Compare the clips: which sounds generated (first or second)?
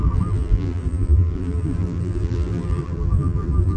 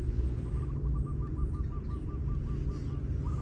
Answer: first